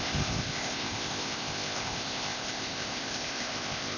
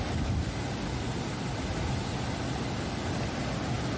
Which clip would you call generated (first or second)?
first